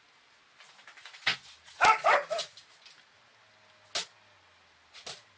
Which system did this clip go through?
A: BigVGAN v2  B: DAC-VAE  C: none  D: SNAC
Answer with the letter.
C